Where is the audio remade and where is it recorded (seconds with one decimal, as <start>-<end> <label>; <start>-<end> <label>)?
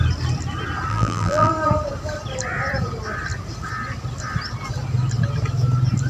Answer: 0.0-0.9 recorded; 0.9-1.5 remade; 1.5-6.1 recorded